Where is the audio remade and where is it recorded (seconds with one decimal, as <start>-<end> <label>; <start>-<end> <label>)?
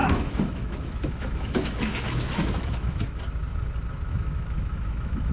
0.0-3.2 remade; 3.2-4.1 recorded; 4.1-5.3 remade